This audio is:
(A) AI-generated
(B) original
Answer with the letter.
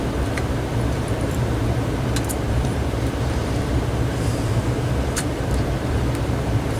A